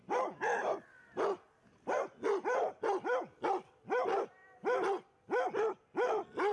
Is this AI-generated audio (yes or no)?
no